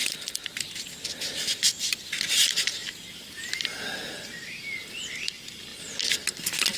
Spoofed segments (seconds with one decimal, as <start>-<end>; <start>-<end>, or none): 0.0-3.5